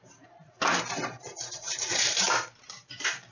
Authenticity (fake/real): fake